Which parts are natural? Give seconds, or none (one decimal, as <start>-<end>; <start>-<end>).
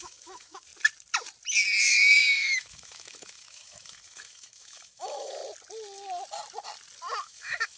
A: 0.7-1.8; 5.4-7.2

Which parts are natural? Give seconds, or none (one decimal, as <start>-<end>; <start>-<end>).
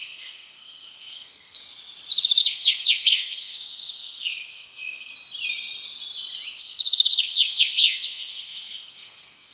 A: 1.6-2.4; 5.1-6.6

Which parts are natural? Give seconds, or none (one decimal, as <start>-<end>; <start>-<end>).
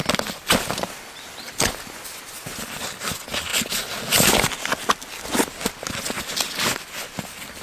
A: 0.0-7.6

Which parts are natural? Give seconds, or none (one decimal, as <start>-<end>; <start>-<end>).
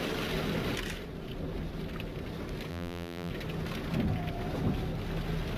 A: 0.0-2.7; 3.3-5.6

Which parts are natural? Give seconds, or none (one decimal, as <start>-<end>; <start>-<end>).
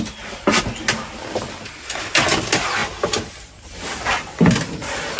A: 0.0-5.2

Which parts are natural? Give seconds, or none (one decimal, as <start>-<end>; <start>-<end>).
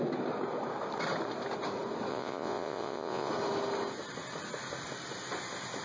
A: 0.0-2.1; 3.3-5.8